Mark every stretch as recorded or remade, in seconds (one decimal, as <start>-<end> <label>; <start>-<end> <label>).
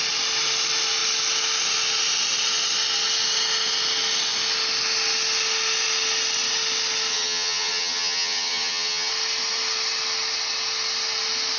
0.0-7.1 recorded; 7.1-9.1 remade; 9.1-11.6 recorded